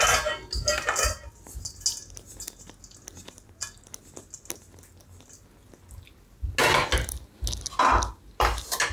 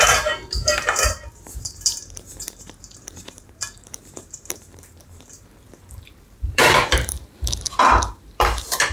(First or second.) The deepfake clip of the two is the second